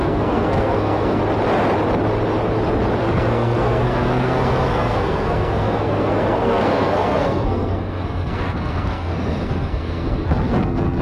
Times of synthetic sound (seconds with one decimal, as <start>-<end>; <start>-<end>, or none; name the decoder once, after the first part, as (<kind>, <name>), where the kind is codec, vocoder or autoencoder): 0.0-1.2 (codec, SNAC); 3.0-11.0